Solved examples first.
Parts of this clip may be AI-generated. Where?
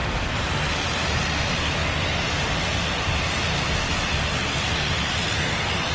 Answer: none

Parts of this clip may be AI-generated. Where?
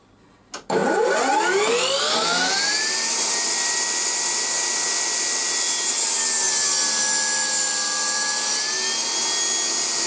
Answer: none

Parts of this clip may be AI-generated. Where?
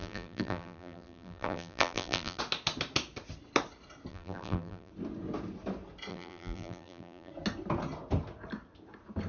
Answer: 0.0-2.4 (vocoder, BigVGAN v2); 4.1-4.9; 6.1-7.3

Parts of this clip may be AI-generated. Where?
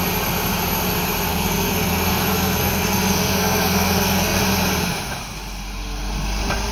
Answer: 1.3-4.4 (codec, SNAC)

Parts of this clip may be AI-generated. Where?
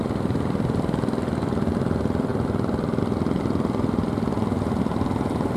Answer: none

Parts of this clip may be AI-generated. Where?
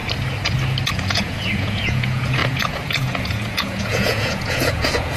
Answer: 0.9-5.2 (vocoder, Vocos)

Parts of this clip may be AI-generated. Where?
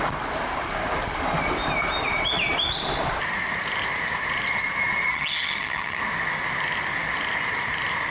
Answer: 5.1-6.0 (vocoder, HiFi-GAN)